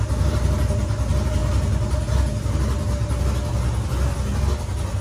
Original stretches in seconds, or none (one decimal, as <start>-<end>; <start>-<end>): 0.0-5.0